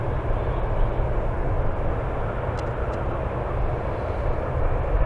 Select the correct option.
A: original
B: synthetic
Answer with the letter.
A